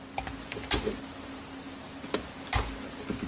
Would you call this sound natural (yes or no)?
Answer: yes